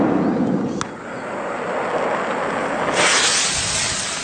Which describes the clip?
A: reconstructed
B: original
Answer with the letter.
B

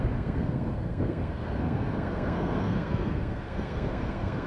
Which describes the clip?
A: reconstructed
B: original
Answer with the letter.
A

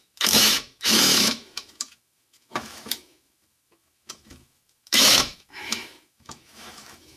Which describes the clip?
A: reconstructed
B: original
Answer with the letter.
A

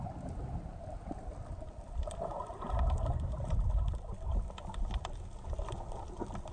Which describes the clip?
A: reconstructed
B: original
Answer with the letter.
B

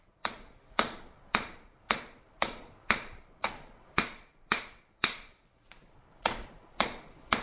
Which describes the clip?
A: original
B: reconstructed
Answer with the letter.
B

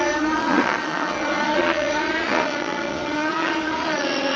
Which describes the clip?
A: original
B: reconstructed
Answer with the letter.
B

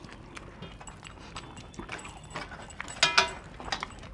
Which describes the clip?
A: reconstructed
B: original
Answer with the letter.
B